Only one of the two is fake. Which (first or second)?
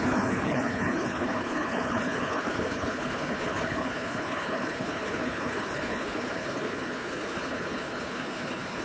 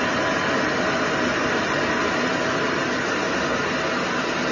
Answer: first